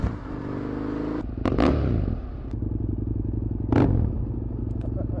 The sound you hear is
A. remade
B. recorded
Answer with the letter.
B